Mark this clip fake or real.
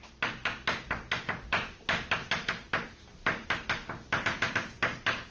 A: real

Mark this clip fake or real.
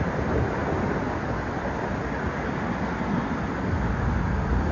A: real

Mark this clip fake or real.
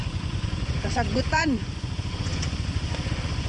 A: fake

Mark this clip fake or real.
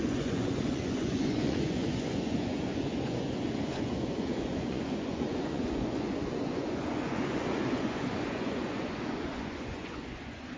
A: fake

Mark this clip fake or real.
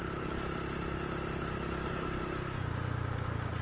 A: real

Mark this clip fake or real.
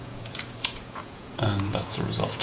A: fake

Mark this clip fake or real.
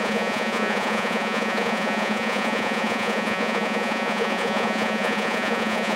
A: fake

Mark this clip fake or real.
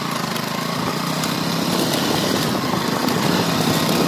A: real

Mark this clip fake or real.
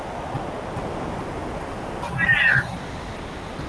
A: real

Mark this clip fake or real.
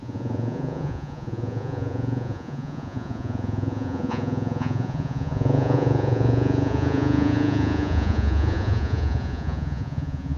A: fake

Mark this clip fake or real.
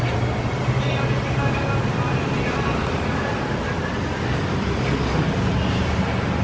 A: real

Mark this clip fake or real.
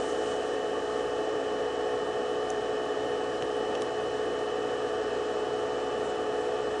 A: real